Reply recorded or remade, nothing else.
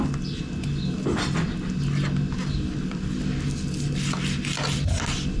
recorded